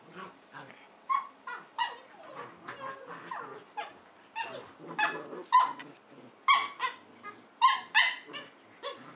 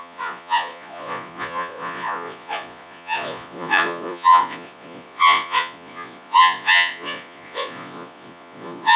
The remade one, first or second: second